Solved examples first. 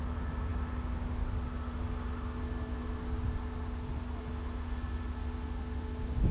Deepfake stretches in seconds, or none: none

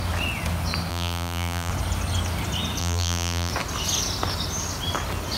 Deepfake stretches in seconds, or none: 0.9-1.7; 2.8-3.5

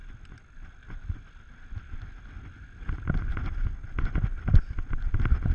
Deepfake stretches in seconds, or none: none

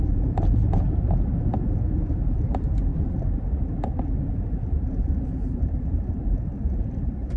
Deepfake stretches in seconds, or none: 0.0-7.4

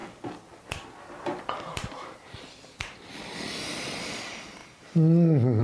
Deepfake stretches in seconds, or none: 0.6-4.6

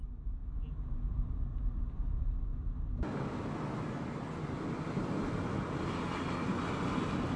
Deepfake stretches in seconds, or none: none